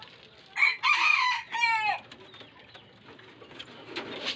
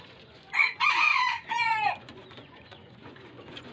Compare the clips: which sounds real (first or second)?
first